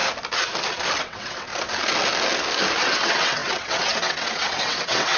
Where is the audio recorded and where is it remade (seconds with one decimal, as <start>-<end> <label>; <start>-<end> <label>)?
0.0-1.0 recorded; 1.0-1.5 remade; 1.5-2.8 recorded; 2.8-5.2 remade